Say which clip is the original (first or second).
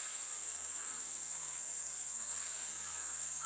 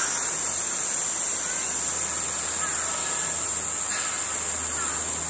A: second